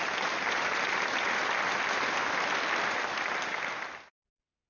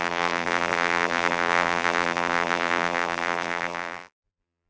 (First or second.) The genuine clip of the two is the first